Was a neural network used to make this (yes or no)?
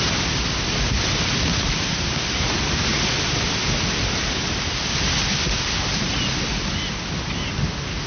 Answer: no